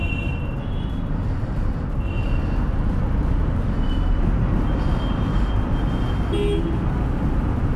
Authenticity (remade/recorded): recorded